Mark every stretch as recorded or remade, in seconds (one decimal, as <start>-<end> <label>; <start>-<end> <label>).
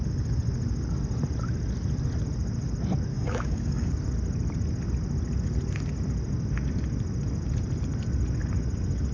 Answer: 0.0-3.1 recorded; 3.1-3.9 remade; 3.9-9.1 recorded